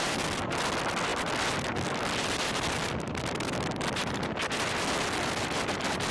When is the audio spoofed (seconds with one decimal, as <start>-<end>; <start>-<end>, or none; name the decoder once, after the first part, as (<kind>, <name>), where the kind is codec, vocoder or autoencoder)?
none